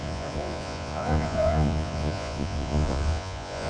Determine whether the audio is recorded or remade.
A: remade